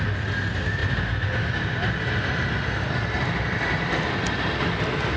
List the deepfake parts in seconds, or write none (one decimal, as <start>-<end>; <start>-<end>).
none